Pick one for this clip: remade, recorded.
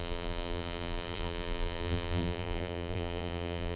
remade